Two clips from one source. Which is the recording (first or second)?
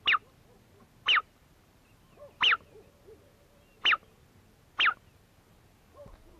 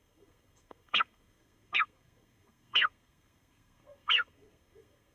first